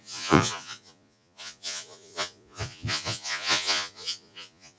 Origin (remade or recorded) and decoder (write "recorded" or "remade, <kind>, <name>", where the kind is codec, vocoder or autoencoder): remade, vocoder, Vocos